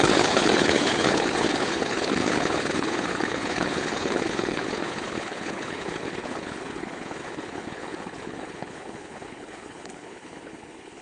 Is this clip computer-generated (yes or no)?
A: yes